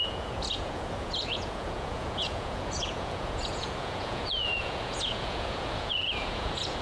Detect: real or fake fake